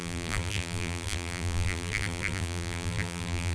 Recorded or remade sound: remade